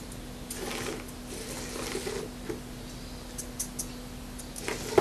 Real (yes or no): yes